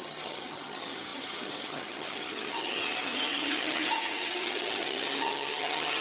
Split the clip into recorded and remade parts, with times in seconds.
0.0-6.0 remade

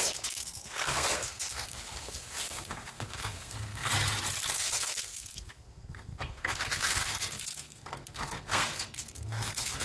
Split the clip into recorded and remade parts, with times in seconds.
0.0-3.9 remade; 3.9-4.5 recorded; 4.5-9.8 remade

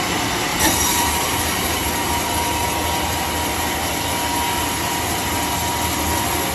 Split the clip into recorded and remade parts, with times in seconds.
0.0-0.5 recorded; 0.5-1.8 remade; 1.8-6.5 recorded

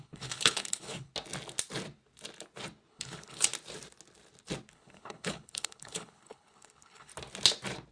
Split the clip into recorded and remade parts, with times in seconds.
0.0-1.1 remade; 1.1-2.9 recorded; 2.9-3.5 remade; 3.5-4.7 recorded; 4.7-7.1 remade; 7.1-7.9 recorded

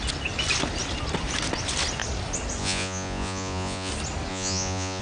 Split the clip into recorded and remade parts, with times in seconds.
0.0-2.6 recorded; 2.6-3.9 remade; 3.9-4.3 recorded; 4.3-5.0 remade

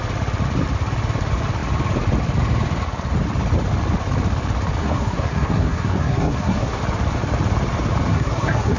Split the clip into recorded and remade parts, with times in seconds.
0.0-4.8 recorded; 4.8-6.8 remade; 6.8-8.1 recorded; 8.1-8.8 remade